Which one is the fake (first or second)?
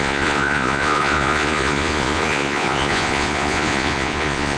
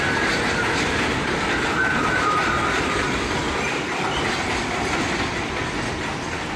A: first